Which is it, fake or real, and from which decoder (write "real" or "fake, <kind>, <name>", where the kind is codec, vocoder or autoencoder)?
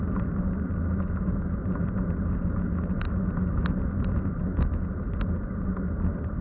real